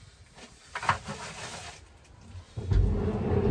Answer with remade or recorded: recorded